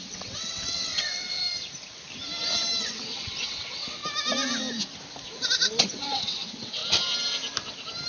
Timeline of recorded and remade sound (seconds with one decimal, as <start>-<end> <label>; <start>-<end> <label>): 0.0-1.4 remade; 1.4-2.8 recorded; 2.8-4.0 remade; 4.0-5.8 recorded; 5.8-6.8 remade; 6.8-8.1 recorded